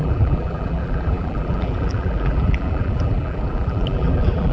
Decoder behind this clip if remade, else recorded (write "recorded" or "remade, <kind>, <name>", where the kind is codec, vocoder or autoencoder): remade, vocoder, BigVGAN v2